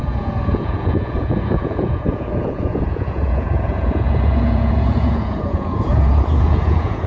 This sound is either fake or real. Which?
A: fake